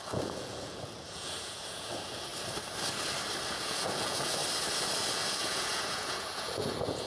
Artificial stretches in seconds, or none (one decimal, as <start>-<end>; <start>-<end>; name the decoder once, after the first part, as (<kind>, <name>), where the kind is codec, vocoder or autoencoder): 0.0-2.3 (vocoder, Vocos); 3.5-4.4; 5.1-7.1